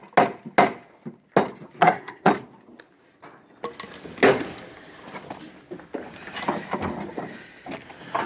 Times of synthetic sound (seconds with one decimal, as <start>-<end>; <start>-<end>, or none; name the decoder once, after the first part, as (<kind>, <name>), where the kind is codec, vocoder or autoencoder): 1.8-2.3 (codec, SNAC)